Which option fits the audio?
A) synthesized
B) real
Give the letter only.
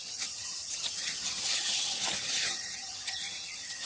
A